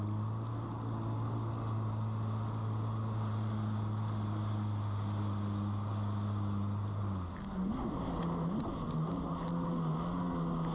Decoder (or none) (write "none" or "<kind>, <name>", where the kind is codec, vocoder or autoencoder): none